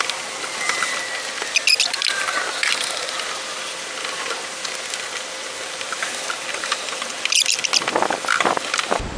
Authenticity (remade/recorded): recorded